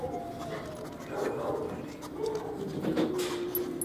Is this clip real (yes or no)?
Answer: yes